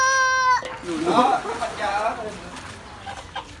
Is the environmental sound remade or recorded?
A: recorded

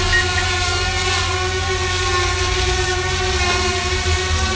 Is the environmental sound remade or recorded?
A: recorded